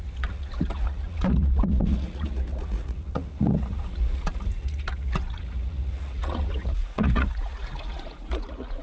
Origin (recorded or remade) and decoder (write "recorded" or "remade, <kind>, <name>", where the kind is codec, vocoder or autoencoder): remade, vocoder, Vocos